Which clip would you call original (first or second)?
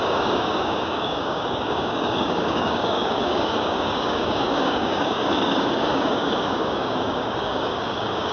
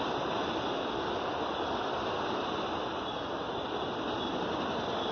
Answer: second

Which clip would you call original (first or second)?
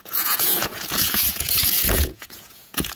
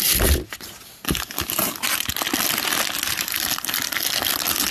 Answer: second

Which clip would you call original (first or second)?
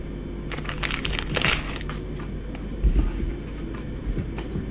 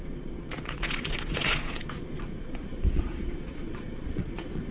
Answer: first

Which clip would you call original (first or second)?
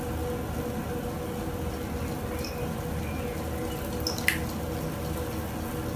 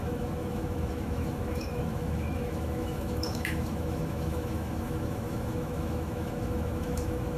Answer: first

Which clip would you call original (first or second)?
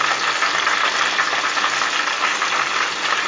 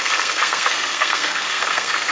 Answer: first